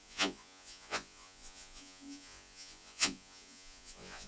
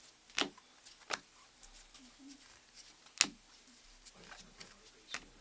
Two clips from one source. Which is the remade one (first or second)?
first